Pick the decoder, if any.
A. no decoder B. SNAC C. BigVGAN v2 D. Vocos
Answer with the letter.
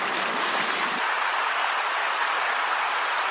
A